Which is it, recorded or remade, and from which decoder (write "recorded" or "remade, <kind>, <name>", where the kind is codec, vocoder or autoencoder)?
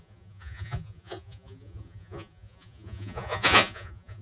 remade, vocoder, Vocos